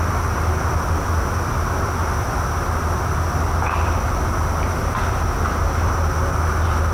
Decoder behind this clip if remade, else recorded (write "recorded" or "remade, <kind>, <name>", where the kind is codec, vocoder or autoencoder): recorded